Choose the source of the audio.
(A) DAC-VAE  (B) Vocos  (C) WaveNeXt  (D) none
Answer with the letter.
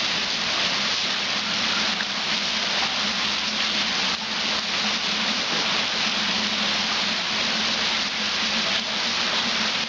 D